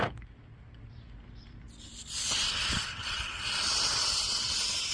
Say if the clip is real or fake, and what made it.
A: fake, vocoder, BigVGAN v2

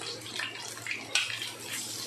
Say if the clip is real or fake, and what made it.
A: real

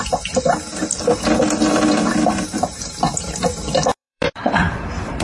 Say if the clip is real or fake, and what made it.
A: fake, vocoder, BigVGAN v2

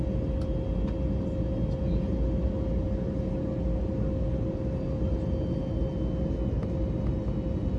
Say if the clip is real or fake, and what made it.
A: real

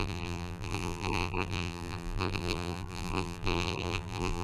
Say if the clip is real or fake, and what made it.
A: fake, vocoder, BigVGAN v2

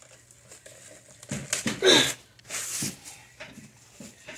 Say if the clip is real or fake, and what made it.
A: real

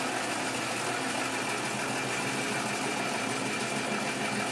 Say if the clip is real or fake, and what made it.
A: real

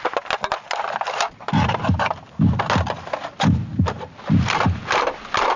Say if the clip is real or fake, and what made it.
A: real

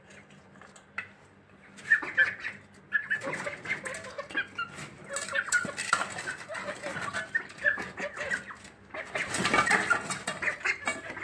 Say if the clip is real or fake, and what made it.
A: real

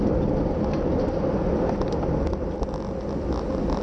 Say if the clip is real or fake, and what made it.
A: real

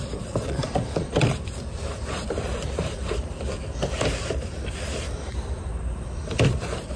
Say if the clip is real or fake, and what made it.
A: fake, vocoder, BigVGAN v2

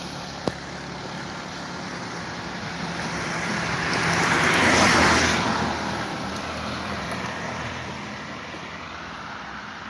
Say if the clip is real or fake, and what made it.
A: fake, vocoder, BigVGAN v2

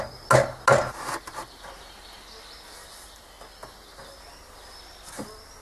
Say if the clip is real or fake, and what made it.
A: real